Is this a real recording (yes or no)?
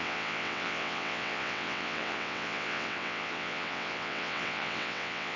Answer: no